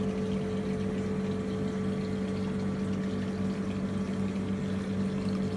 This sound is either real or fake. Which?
real